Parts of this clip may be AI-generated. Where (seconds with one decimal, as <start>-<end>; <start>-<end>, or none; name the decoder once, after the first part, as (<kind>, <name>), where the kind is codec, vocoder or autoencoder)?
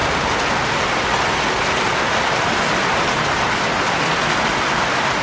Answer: none